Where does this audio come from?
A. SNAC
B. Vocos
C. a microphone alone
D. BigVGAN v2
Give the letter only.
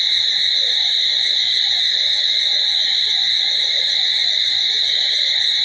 C